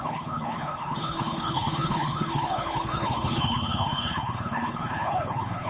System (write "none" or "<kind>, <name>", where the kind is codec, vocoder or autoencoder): codec, HILCodec